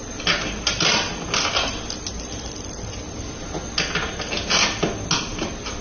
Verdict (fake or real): real